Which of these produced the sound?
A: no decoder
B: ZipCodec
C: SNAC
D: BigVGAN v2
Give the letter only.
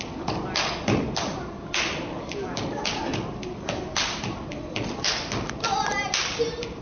A